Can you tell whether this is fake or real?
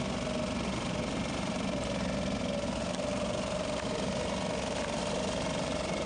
real